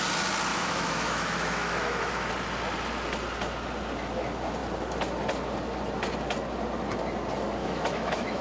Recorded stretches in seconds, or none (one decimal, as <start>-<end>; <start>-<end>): 0.0-0.5; 2.3-7.6